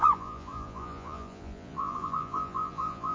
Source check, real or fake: fake